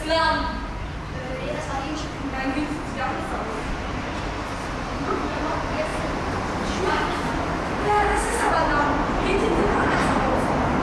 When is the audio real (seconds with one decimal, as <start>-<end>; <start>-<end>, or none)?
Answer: 0.0-7.8; 8.5-10.8